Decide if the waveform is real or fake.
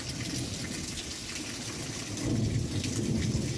real